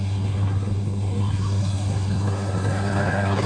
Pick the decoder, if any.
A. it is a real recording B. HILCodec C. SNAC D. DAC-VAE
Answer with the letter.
C